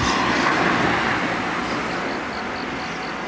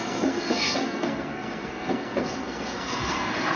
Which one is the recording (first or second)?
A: first